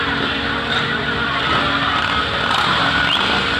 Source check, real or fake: real